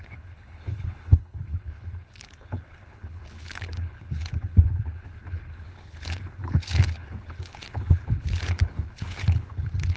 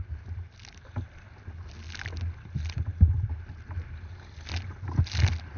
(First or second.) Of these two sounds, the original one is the second